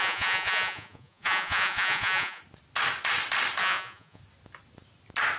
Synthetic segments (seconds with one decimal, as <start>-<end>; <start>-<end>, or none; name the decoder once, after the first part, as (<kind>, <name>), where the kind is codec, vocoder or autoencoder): 0.0-2.4 (vocoder, Vocos); 3.6-4.2

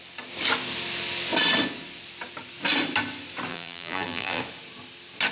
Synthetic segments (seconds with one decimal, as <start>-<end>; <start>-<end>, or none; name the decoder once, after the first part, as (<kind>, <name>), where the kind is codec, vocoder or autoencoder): 3.5-4.4 (vocoder, BigVGAN v2)

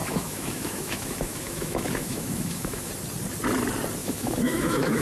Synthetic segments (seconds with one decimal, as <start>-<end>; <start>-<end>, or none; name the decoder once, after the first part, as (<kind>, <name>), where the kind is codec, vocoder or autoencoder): 0.0-2.9 (autoencoder, DAC-VAE); 4.0-5.0

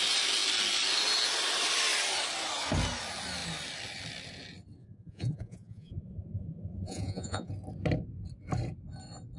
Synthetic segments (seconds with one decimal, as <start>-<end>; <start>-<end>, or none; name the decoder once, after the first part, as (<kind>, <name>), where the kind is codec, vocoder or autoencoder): 4.8-7.5 (vocoder, Vocos)

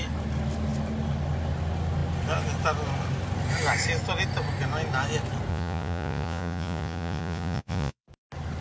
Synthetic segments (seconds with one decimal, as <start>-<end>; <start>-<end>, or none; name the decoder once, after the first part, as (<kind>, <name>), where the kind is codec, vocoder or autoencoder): 5.5-8.0 (vocoder, Vocos)

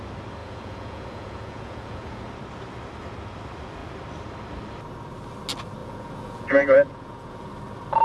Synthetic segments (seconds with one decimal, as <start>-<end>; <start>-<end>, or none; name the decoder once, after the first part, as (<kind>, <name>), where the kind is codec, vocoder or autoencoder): 0.4-2.2 (vocoder, Vocos); 5.8-7.5

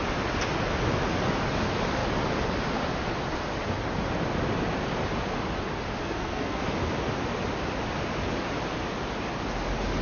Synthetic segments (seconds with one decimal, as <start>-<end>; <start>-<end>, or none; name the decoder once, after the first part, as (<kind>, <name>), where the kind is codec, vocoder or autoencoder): 6.0-6.6 (codec, SNAC)